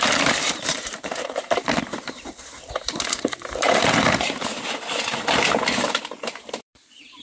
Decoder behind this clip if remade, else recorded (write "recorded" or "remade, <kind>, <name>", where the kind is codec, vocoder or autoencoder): remade, vocoder, BigVGAN v2